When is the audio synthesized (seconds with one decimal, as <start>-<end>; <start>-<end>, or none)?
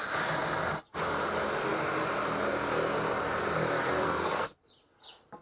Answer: 3.8-4.6